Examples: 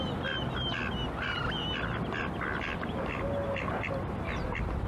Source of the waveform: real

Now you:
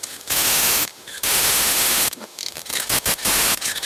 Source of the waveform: fake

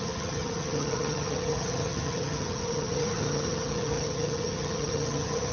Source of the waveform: fake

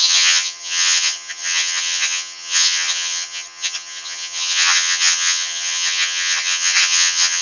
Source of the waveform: fake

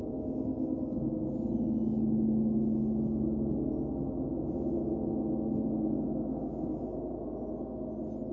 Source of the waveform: real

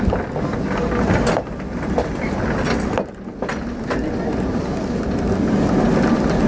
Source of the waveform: real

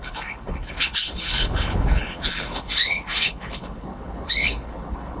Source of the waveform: fake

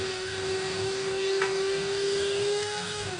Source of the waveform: fake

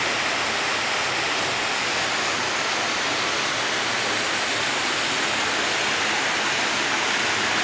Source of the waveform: real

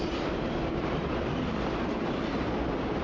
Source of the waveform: real